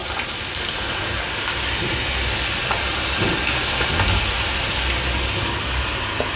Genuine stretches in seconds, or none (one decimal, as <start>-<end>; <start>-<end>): 0.0-6.4